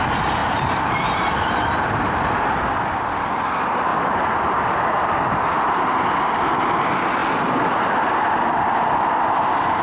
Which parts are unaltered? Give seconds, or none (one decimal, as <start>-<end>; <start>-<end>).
0.0-0.4; 2.6-3.9; 5.4-9.8